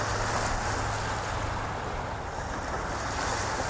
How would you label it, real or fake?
real